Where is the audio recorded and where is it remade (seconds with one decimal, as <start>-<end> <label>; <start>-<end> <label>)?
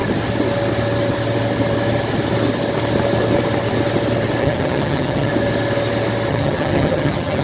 0.0-4.4 recorded; 4.4-5.3 remade; 5.3-6.3 recorded; 6.3-7.4 remade